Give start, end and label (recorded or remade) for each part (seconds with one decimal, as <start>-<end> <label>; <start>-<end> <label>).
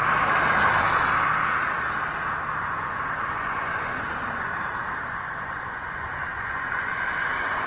0.0-2.6 recorded; 2.6-4.5 remade; 4.5-5.1 recorded; 5.1-7.7 remade